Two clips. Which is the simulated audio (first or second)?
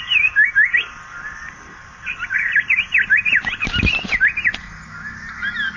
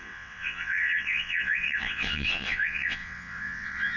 second